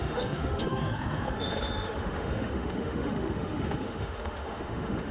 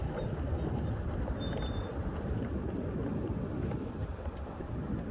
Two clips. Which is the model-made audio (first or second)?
first